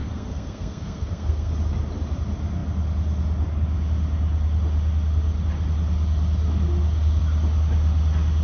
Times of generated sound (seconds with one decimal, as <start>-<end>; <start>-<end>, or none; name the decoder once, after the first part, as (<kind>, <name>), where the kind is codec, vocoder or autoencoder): 0.0-1.5 (codec, SNAC)